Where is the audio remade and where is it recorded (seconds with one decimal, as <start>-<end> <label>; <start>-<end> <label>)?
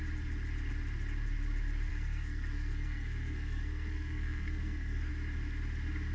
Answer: 0.0-1.9 recorded; 1.9-5.1 remade; 5.1-6.1 recorded